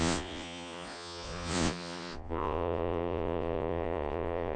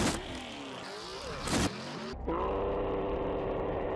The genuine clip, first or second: second